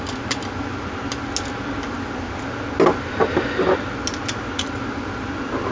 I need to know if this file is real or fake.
real